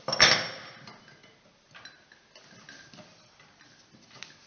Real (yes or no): yes